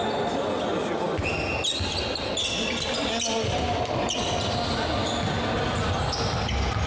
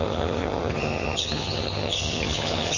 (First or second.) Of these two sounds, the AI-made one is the second